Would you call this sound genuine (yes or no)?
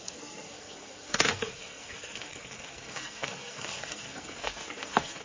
no